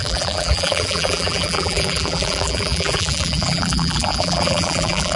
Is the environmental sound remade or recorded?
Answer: remade